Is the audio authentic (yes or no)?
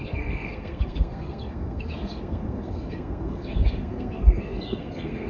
no